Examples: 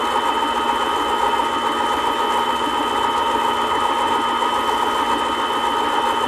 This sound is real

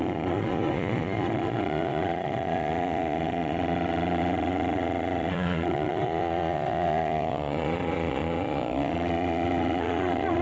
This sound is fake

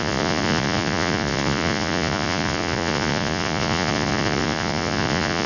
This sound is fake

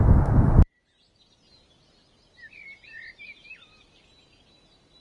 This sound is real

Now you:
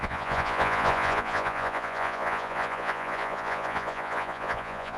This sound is fake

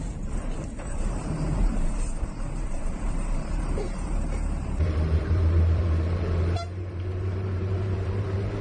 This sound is fake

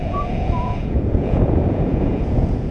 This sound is fake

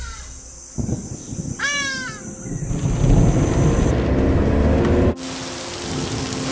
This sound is real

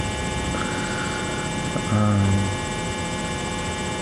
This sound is real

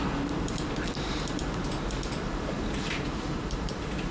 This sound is fake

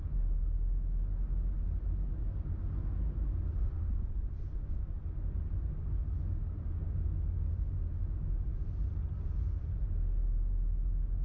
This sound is real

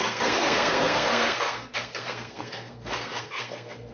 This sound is fake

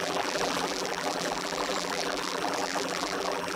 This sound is fake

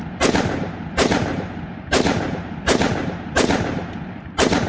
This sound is fake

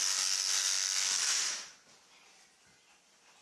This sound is real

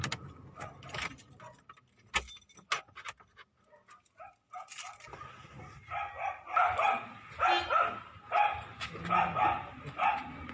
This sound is real